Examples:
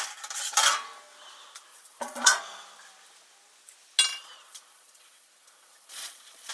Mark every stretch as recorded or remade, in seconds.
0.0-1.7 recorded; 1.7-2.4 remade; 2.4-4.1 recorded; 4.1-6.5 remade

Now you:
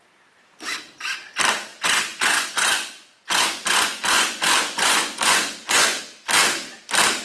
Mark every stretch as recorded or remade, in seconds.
0.0-1.7 recorded; 1.7-6.0 remade; 6.0-7.2 recorded